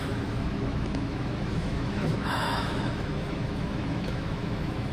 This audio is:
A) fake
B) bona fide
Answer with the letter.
A